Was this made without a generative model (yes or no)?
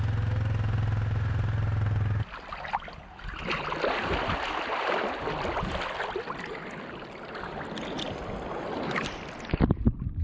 yes